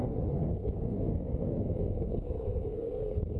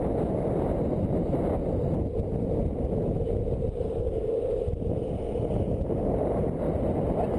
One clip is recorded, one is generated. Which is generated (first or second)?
first